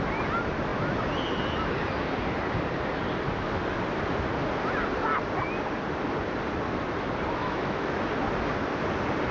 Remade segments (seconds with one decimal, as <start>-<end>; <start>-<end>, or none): 7.4-8.1